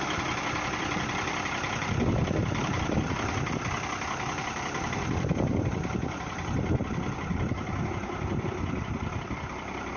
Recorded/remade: remade